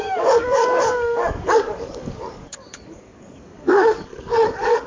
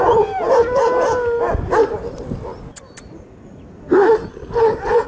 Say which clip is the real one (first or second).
second